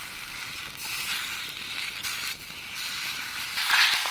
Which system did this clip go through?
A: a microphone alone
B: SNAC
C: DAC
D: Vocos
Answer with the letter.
A